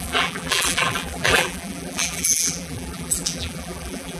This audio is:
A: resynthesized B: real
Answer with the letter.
A